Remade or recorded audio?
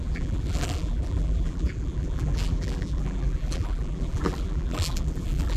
remade